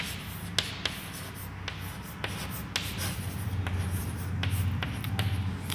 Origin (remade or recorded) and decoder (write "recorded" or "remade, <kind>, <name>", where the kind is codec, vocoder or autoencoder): recorded